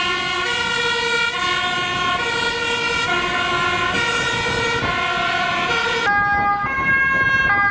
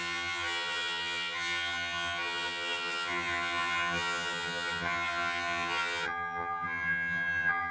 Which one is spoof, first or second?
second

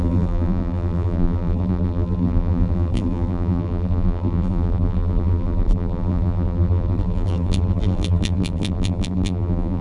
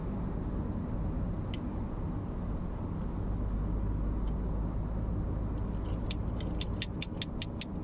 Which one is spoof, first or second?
first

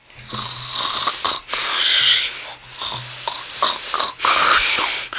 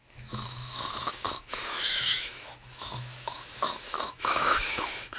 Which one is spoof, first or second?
second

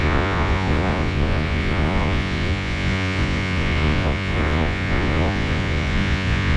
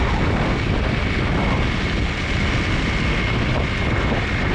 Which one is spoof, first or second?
first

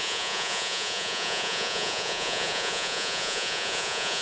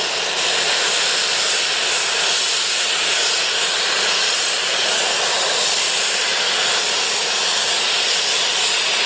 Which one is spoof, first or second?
first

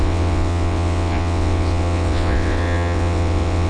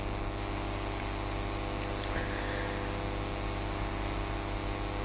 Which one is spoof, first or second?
first